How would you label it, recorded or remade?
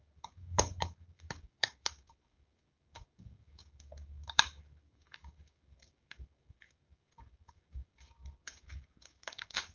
remade